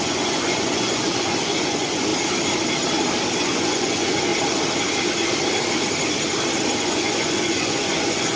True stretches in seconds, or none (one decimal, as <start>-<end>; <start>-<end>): 2.1-3.4; 4.3-6.8